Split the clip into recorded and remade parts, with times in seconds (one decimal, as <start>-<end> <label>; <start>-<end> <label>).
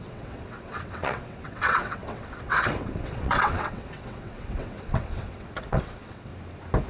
0.0-6.3 remade; 6.3-6.9 recorded